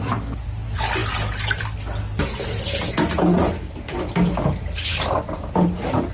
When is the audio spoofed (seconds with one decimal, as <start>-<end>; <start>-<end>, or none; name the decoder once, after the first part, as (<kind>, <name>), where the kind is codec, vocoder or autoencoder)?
4.9-6.1 (vocoder, BigVGAN v2)